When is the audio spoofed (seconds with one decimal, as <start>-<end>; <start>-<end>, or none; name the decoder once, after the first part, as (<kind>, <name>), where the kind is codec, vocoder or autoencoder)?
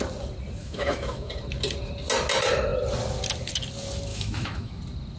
0.6-1.3 (autoencoder, DAC-VAE); 4.1-4.8